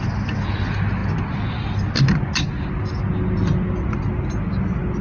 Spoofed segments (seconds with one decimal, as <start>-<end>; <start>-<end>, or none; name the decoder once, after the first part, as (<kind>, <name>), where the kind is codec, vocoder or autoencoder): none